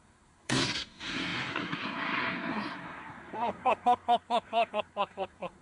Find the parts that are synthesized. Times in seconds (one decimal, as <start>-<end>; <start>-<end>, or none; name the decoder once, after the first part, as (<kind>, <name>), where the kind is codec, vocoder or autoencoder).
0.0-5.6 (codec, SNAC)